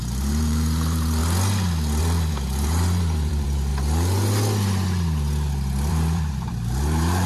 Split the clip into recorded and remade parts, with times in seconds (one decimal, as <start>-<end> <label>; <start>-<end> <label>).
0.0-1.2 remade; 1.2-2.0 recorded; 2.0-3.7 remade; 3.7-5.9 recorded; 5.9-7.3 remade